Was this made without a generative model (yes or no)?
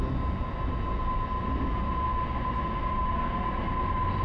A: yes